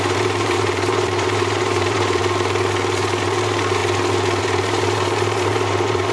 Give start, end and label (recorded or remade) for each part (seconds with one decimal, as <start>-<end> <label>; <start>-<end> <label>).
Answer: 0.0-2.2 remade; 2.2-3.2 recorded; 3.2-3.8 remade; 3.8-4.4 recorded; 4.4-6.1 remade